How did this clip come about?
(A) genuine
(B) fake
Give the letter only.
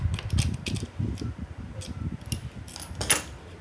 A